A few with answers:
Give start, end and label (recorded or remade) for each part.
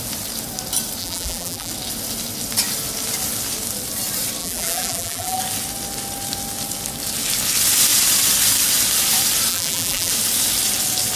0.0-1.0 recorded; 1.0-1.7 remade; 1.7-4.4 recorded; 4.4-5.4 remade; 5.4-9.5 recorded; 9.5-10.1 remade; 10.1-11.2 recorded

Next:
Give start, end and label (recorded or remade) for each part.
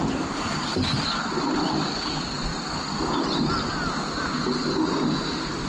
0.0-2.5 remade; 2.5-5.3 recorded; 5.3-5.7 remade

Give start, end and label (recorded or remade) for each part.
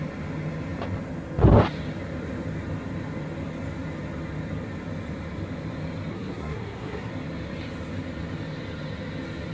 0.0-6.1 recorded; 6.1-7.1 remade; 7.1-9.5 recorded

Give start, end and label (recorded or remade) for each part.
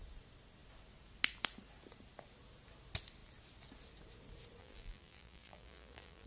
0.0-4.6 recorded; 4.6-6.3 remade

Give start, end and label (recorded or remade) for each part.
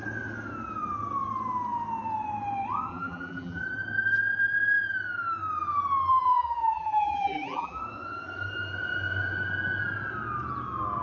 0.0-2.9 recorded; 2.9-3.6 remade; 3.6-6.1 recorded; 6.1-7.8 remade; 7.8-11.0 recorded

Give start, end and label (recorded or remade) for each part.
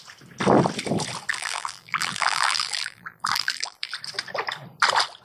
0.0-1.3 recorded; 1.3-3.9 remade; 3.9-5.2 recorded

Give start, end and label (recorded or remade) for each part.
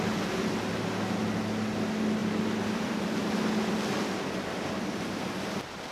0.0-2.2 recorded; 2.2-3.2 remade; 3.2-5.9 recorded